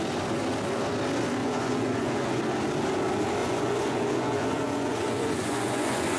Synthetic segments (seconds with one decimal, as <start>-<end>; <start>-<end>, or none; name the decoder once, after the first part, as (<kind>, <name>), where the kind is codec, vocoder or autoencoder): 1.4-2.4 (vocoder, Vocos); 3.4-6.2